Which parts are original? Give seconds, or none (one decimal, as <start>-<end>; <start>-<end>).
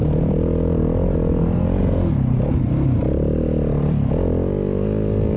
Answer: 0.0-5.4